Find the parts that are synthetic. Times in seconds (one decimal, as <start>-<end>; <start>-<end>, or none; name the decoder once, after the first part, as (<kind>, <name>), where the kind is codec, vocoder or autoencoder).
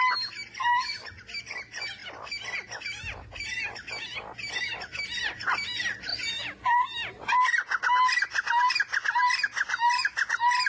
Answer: none